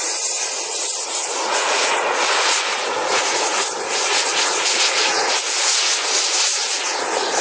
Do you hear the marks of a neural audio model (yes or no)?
yes